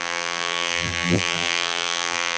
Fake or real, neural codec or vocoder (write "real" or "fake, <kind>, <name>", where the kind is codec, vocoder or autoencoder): fake, vocoder, BigVGAN v2